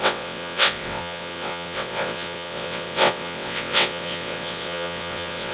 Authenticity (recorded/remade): remade